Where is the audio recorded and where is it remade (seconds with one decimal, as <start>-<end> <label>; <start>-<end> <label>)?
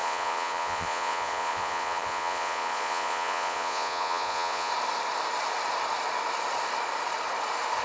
0.0-4.7 remade; 4.7-7.8 recorded